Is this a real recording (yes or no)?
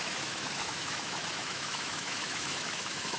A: no